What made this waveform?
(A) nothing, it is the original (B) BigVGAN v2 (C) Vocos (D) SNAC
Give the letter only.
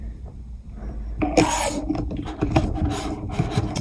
B